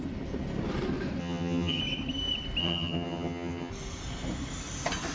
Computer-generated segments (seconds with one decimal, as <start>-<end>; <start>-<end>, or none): 1.2-1.8; 2.6-3.7